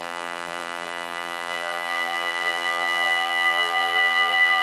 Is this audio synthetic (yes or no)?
yes